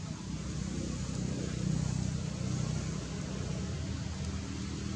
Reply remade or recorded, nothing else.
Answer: recorded